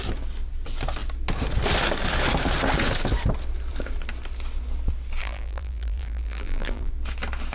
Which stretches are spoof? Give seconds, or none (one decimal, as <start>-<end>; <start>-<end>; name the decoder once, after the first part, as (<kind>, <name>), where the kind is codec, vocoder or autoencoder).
5.2-6.9 (vocoder, BigVGAN v2)